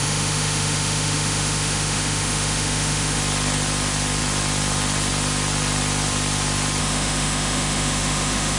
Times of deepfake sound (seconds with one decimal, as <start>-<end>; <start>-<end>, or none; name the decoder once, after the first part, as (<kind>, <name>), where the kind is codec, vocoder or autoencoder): 0.0-3.2 (autoencoder, DAC-VAE); 6.8-8.6